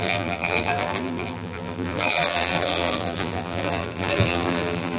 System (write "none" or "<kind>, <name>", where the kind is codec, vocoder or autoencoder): vocoder, BigVGAN v2